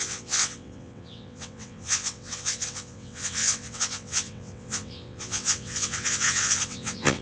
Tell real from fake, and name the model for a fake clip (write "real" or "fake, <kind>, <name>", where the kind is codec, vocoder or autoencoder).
fake, vocoder, WaveNeXt